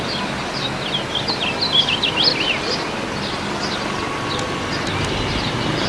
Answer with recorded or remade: recorded